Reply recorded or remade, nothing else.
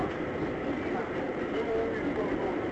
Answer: recorded